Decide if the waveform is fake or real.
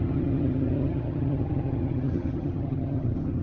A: fake